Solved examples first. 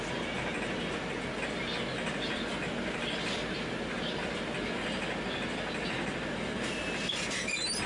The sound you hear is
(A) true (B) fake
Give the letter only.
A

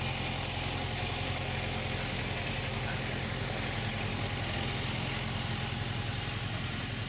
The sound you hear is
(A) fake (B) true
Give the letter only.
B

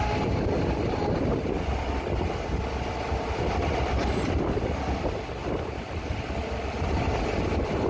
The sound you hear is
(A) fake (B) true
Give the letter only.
B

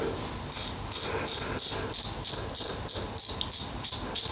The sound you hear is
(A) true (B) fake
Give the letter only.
A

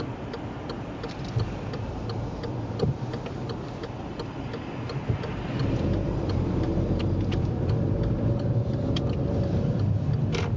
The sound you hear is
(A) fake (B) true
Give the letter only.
A